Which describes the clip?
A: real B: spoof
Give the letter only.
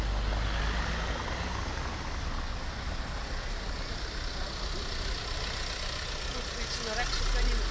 A